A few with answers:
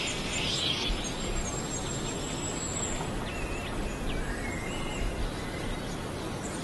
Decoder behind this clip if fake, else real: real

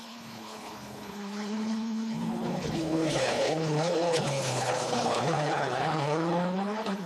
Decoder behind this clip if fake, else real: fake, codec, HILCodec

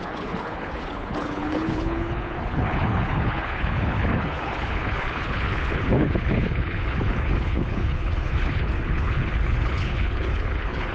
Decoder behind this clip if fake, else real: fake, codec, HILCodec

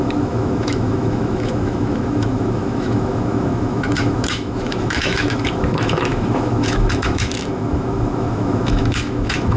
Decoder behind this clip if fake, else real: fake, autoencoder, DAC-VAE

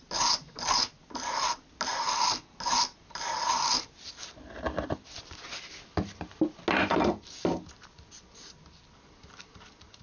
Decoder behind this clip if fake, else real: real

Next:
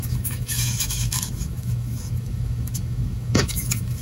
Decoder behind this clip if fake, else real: fake, autoencoder, DAC-VAE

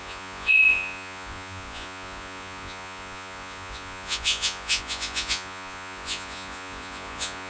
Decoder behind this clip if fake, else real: fake, vocoder, Vocos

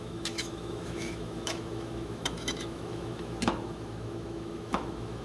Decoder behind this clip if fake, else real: fake, autoencoder, DAC-VAE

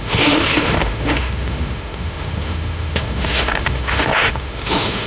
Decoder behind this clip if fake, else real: fake, autoencoder, DAC-VAE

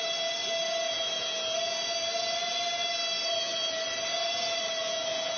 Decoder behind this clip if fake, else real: real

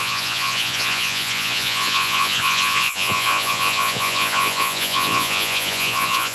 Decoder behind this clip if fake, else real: fake, vocoder, Vocos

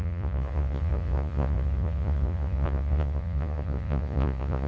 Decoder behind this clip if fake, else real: fake, vocoder, Vocos